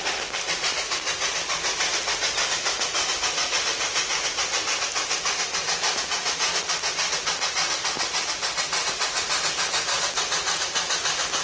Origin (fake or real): real